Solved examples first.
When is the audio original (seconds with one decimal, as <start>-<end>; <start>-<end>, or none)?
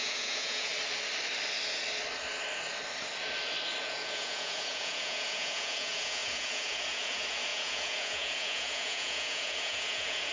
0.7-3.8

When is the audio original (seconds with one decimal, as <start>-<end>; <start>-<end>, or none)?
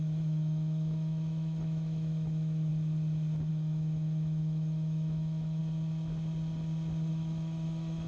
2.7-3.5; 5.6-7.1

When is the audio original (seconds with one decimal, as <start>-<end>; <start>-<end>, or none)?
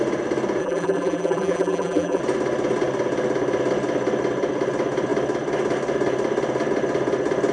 0.0-0.6; 2.2-7.5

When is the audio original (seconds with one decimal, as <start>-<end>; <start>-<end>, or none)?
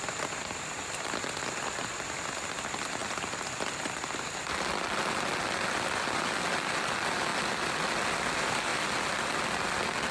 0.0-10.1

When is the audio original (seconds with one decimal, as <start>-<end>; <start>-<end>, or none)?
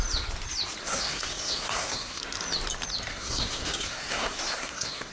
0.0-0.8; 2.2-3.1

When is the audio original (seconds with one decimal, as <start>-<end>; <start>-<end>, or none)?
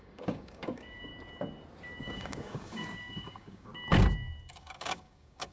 1.1-2.0; 3.7-4.5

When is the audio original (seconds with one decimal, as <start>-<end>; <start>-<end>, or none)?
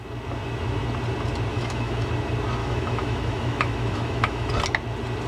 0.0-1.5; 2.1-2.6; 4.5-5.3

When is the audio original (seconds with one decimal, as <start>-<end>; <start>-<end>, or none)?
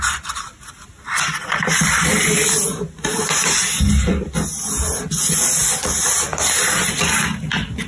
0.0-7.9